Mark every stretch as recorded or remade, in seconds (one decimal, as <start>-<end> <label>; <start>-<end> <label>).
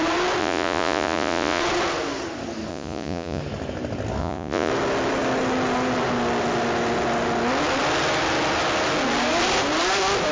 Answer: 0.0-0.4 recorded; 0.4-1.6 remade; 1.6-2.7 recorded; 2.7-3.4 remade; 3.4-4.2 recorded; 4.2-4.7 remade; 4.7-10.3 recorded